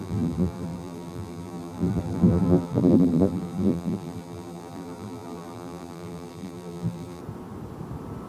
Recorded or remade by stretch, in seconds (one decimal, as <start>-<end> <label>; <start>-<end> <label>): 0.0-7.2 remade; 7.2-8.3 recorded